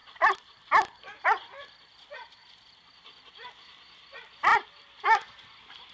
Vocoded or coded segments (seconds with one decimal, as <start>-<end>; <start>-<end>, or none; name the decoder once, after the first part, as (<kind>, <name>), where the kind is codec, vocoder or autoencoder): none